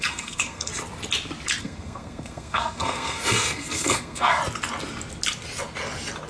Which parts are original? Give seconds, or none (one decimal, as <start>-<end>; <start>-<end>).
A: 0.7-1.6; 4.4-6.3